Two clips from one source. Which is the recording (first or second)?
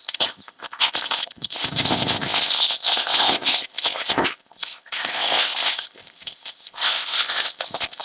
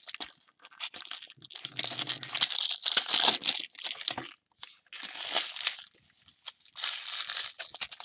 second